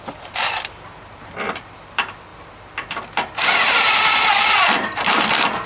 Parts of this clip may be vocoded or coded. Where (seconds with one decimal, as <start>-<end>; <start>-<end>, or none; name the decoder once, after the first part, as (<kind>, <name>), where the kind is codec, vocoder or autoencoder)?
0.0-5.7 (vocoder, BigVGAN v2)